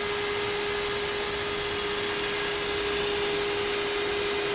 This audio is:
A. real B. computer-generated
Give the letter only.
A